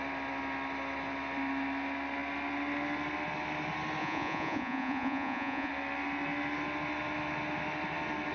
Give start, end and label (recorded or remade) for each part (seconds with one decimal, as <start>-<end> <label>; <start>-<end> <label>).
0.0-4.0 recorded; 4.0-5.7 remade; 5.7-8.3 recorded